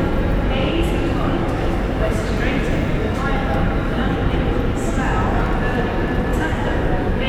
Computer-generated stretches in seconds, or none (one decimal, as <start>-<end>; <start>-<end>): 0.6-2.3; 2.9-4.3; 6.3-7.3